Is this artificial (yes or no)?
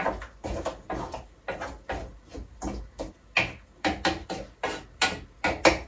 no